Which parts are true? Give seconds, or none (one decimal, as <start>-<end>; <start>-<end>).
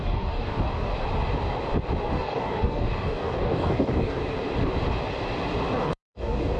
0.9-2.0; 4.2-5.8